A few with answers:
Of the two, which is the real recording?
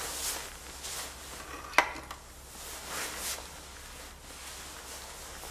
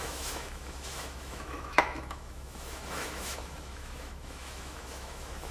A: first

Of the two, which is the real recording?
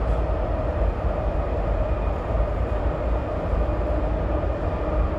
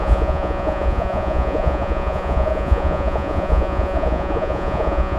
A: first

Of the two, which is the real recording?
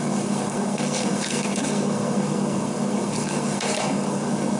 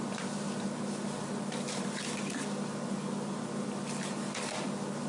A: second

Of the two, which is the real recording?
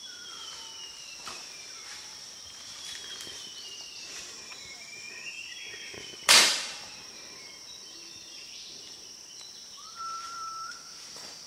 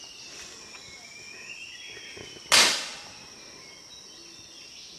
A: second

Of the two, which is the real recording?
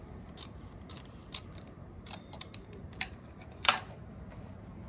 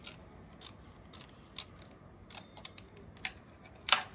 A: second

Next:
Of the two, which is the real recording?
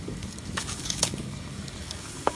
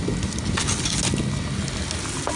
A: second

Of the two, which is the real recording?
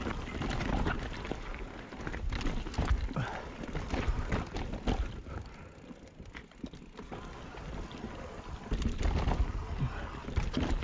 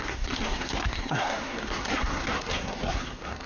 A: first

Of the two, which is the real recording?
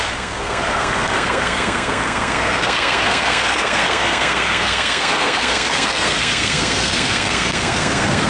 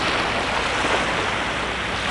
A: second